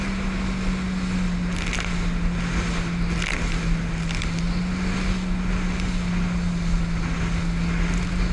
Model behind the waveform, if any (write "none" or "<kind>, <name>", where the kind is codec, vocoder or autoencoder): none